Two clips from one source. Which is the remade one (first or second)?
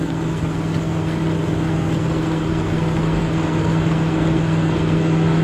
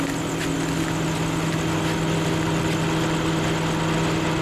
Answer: first